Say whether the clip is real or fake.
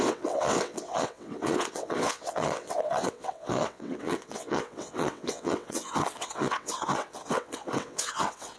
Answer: fake